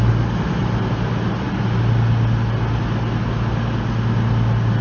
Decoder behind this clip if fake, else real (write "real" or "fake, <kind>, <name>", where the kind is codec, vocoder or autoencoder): real